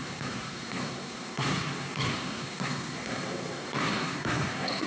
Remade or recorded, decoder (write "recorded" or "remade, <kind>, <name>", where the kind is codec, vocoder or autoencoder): remade, codec, SNAC